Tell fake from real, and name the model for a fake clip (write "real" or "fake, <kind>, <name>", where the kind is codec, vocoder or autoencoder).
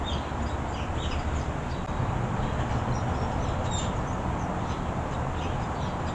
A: real